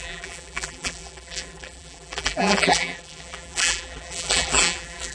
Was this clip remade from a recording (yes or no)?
yes